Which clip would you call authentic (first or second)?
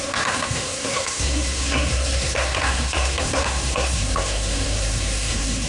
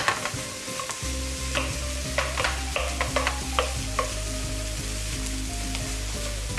second